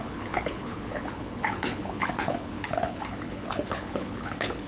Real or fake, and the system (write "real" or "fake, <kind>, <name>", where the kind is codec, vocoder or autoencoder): fake, codec, HILCodec